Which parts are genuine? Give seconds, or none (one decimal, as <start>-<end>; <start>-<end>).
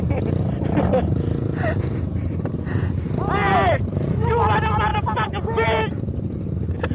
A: 0.0-3.4; 4.3-6.9